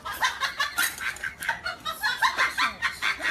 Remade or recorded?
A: recorded